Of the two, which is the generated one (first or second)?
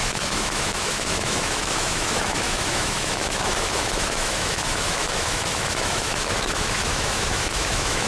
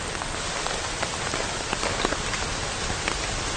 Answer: first